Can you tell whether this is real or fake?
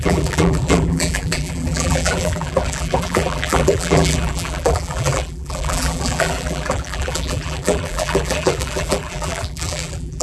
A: fake